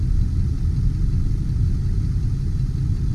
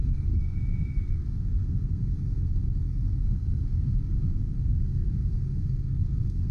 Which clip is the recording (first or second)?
first